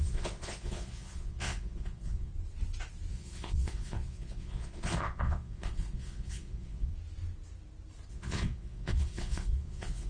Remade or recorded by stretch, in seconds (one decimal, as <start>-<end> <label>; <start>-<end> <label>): 0.0-2.3 remade; 2.3-3.1 recorded; 3.1-6.9 remade; 6.9-8.1 recorded; 8.1-10.1 remade

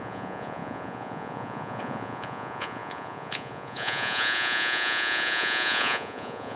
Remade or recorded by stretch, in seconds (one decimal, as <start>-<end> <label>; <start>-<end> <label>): 0.0-6.6 remade

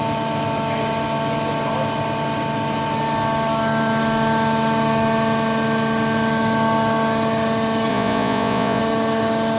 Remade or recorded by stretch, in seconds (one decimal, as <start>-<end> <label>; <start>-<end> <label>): 0.0-7.9 recorded; 7.9-8.8 remade; 8.8-9.6 recorded

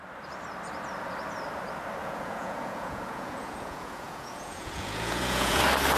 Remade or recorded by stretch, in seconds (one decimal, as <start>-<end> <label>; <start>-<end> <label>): 0.0-2.0 recorded; 2.0-5.6 remade; 5.6-6.0 recorded

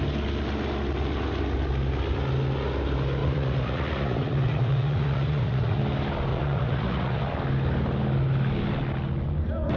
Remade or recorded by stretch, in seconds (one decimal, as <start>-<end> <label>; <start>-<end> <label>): 0.0-3.2 recorded; 3.2-5.8 remade; 5.8-6.3 recorded; 6.3-7.2 remade; 7.2-9.8 recorded